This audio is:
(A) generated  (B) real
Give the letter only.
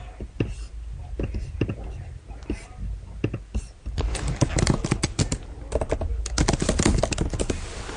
B